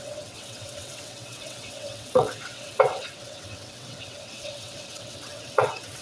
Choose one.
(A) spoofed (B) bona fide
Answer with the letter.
A